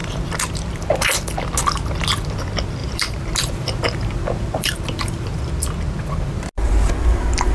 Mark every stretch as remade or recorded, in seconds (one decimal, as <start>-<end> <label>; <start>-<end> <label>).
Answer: 0.0-2.8 recorded; 2.8-5.5 remade; 5.5-7.5 recorded